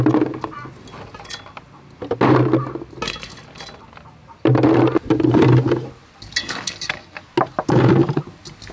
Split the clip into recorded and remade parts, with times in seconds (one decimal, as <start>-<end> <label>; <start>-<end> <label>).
0.0-6.4 recorded; 6.4-7.3 remade; 7.3-8.7 recorded